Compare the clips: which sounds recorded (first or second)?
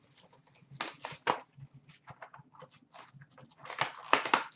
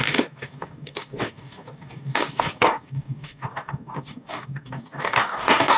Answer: first